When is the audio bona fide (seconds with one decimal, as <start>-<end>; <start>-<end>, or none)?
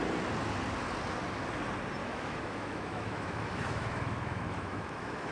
0.0-2.0